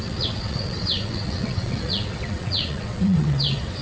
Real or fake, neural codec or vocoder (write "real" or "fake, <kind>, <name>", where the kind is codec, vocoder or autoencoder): fake, vocoder, WaveNeXt